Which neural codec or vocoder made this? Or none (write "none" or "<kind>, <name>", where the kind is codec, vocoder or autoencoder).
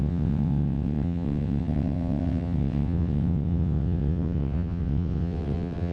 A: vocoder, WaveNeXt